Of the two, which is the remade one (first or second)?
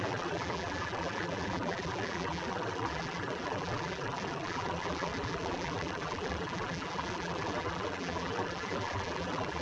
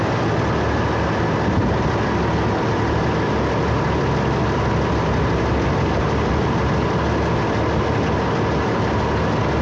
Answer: first